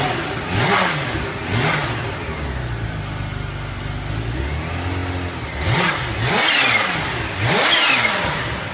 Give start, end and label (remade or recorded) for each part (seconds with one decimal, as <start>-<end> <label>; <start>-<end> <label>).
0.0-8.7 recorded

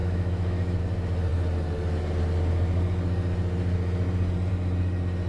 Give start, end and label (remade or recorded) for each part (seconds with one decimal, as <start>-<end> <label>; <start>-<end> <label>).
0.0-0.8 remade; 0.8-5.3 recorded

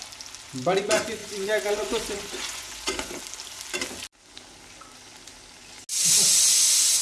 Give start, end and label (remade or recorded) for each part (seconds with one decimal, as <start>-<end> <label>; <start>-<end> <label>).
0.0-1.2 recorded; 1.2-3.2 remade; 3.2-7.0 recorded

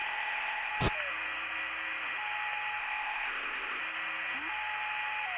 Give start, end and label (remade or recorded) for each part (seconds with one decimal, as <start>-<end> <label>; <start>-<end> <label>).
0.0-0.7 remade; 0.7-2.8 recorded; 2.8-3.8 remade; 3.8-5.4 recorded

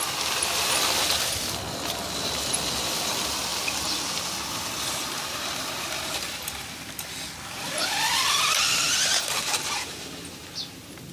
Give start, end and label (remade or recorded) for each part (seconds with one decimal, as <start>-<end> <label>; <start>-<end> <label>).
0.0-11.1 recorded

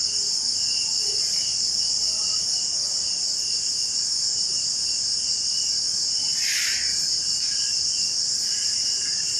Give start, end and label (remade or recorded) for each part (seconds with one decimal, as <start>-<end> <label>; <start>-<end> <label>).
0.0-9.4 recorded

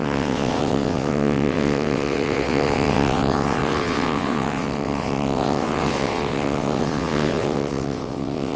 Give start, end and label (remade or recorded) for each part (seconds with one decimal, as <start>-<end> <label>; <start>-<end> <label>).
0.0-8.6 remade

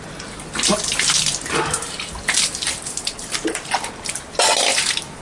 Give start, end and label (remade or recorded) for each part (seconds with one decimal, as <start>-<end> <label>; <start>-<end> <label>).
0.0-0.7 recorded; 0.7-1.8 remade; 1.8-5.2 recorded